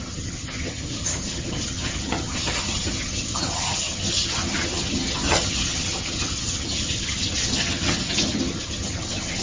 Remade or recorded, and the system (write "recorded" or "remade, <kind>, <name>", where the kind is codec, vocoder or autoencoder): remade, vocoder, HiFi-GAN